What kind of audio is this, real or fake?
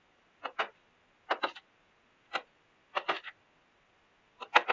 real